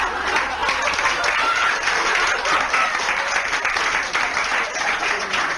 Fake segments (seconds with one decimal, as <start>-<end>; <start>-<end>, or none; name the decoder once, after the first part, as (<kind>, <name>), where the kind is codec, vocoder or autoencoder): 4.5-5.6 (vocoder, Vocos)